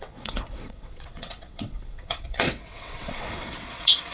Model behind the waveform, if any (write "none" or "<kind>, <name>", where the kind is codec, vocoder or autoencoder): vocoder, WaveNeXt